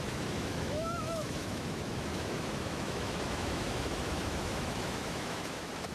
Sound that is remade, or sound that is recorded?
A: remade